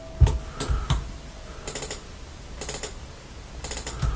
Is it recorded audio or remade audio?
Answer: recorded